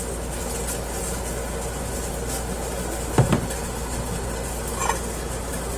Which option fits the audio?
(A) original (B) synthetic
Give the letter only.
A